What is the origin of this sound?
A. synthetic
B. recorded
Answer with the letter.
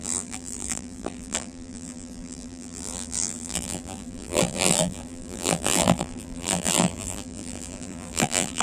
A